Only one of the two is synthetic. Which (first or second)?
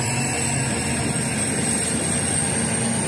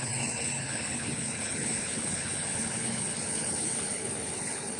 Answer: second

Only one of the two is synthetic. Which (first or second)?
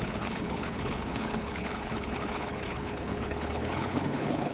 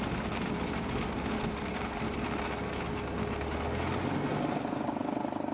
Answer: first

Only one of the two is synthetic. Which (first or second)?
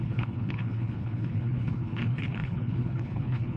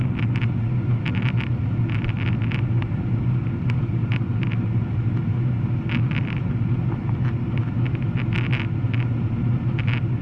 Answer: first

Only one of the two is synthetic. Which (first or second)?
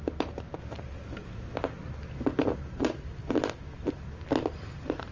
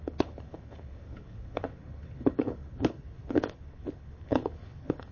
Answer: second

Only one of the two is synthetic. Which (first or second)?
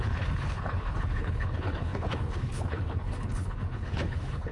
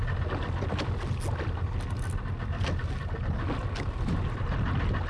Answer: first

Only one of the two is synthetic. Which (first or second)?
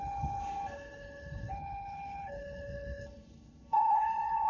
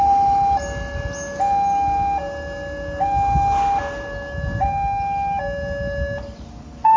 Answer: first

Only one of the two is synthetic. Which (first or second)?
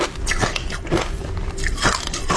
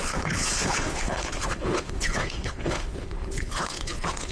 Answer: second